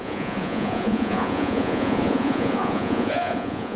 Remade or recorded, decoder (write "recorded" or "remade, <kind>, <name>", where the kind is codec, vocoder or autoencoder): remade, vocoder, Vocos